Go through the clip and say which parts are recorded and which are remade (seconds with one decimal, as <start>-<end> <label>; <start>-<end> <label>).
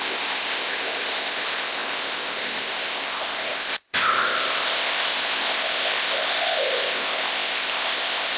0.0-8.4 remade